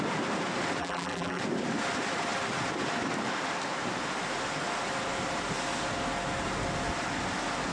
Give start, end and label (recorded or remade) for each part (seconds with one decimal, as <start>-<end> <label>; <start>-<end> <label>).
0.0-0.8 recorded; 0.8-1.4 remade; 1.4-7.7 recorded